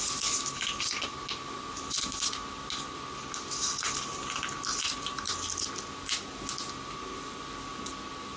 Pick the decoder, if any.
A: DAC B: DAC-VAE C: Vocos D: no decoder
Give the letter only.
D